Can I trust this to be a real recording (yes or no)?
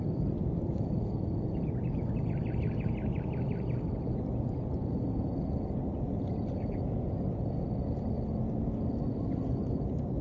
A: yes